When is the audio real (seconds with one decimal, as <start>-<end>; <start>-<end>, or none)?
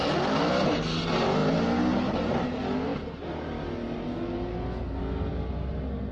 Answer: 0.0-6.1